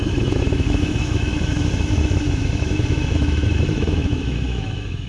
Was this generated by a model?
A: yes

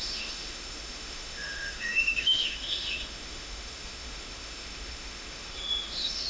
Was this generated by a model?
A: yes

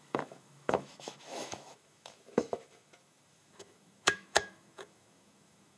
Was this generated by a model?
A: yes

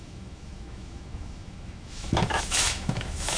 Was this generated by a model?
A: yes